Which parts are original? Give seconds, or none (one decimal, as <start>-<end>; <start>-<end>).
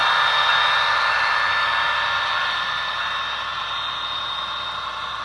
0.0-5.2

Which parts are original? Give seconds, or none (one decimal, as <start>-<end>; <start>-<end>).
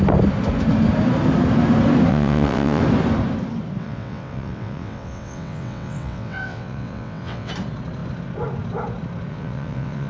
0.0-2.1; 2.8-3.8; 7.5-9.3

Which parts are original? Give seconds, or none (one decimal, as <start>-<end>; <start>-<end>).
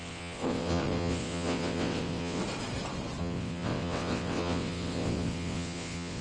2.4-3.2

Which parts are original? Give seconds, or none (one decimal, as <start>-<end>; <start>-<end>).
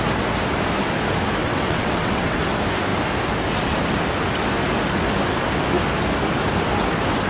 0.0-1.4; 2.4-7.3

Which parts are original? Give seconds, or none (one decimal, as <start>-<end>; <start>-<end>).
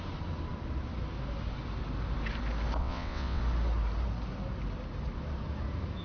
0.0-2.8; 3.4-6.0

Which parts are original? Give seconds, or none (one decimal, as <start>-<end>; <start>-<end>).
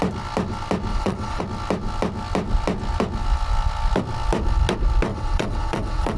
0.0-0.9; 1.4-5.1